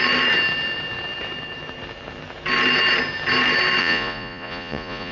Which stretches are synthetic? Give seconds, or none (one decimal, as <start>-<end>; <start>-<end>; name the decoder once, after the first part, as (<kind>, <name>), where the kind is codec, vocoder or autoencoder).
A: 3.8-5.1 (vocoder, Vocos)